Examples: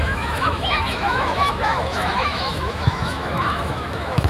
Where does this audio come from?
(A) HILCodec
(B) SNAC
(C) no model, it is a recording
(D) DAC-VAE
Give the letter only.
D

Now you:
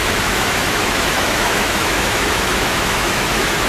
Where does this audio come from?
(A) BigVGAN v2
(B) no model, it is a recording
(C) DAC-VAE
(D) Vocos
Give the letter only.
C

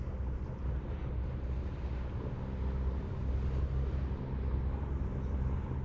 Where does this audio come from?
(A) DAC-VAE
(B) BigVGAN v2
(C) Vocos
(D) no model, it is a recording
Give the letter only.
D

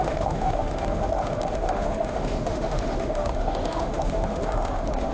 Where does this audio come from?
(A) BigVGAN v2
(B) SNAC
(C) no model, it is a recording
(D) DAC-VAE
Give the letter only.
D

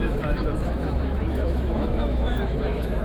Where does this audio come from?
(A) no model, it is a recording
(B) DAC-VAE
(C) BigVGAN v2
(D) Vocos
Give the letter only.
B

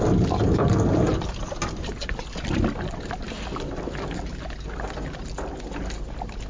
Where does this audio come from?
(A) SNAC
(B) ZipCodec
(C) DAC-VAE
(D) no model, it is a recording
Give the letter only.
D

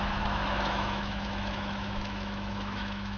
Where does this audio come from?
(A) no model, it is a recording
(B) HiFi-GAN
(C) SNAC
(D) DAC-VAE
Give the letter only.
D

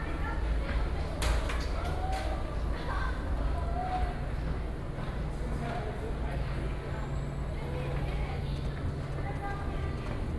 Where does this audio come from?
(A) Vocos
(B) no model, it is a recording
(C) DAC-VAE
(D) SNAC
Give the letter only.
B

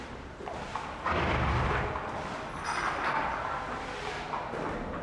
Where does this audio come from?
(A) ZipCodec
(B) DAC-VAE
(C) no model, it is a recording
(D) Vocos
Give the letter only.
C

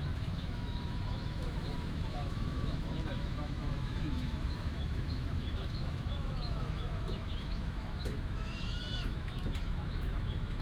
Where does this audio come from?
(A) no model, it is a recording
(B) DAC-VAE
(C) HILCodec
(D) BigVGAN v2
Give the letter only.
B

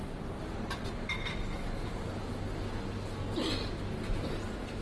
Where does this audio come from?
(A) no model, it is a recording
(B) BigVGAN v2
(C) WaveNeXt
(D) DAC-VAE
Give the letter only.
A